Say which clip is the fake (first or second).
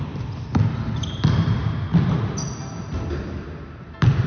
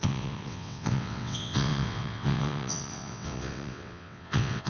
second